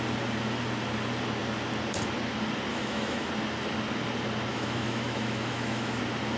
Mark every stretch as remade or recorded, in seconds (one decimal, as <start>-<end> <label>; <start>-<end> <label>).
0.0-2.7 recorded; 2.7-3.3 remade; 3.3-4.5 recorded; 4.5-6.0 remade; 6.0-6.4 recorded